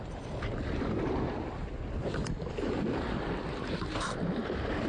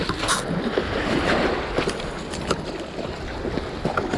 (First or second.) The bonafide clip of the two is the second